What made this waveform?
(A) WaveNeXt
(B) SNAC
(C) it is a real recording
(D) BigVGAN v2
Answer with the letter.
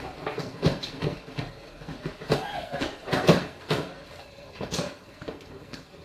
B